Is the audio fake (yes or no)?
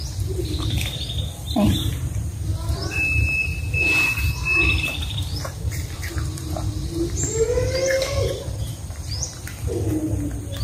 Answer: yes